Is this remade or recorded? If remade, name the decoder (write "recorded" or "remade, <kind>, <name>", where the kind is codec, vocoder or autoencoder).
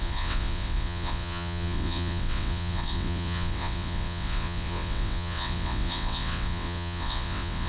remade, vocoder, WaveNeXt